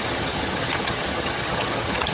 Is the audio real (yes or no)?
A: no